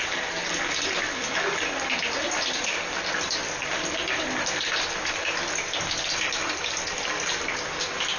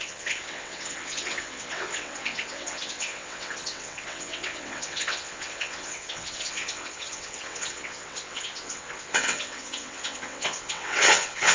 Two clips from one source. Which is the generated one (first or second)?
second